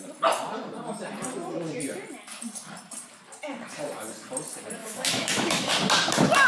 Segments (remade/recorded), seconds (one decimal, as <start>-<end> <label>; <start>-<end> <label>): 0.0-4.8 recorded; 4.8-5.7 remade; 5.7-6.5 recorded